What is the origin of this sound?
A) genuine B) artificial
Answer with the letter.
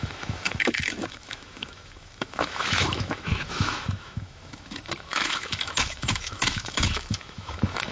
B